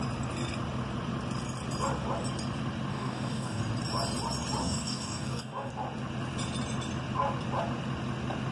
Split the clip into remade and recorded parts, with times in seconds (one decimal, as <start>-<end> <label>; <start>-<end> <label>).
0.0-2.9 recorded; 2.9-3.6 remade; 3.6-4.6 recorded; 4.6-5.7 remade; 5.7-8.5 recorded